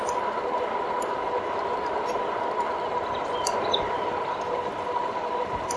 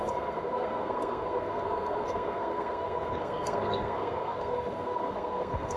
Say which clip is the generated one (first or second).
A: second